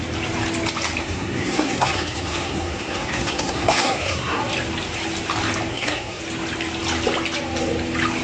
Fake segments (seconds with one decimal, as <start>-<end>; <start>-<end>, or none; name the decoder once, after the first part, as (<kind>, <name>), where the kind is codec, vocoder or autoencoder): 1.0-4.4 (codec, SNAC); 5.7-6.2